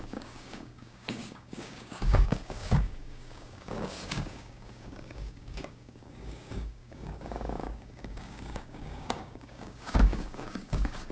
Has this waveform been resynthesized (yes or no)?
yes